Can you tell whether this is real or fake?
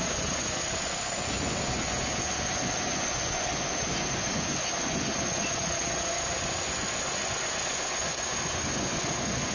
fake